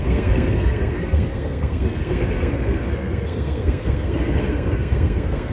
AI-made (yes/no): yes